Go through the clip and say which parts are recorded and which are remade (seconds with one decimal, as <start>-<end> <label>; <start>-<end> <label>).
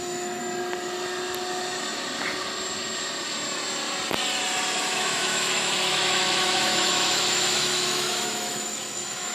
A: 0.0-0.4 remade; 0.4-4.8 recorded; 4.8-9.3 remade